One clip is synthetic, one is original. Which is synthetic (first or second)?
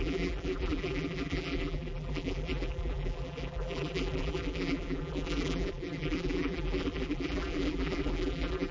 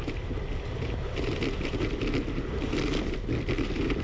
first